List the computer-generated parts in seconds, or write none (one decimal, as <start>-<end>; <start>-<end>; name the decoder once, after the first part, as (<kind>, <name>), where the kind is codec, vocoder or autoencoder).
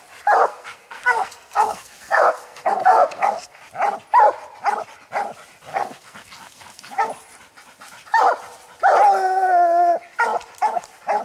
0.4-3.6 (codec, SNAC); 5.7-7.1